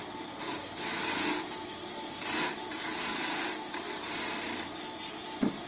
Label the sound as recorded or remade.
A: recorded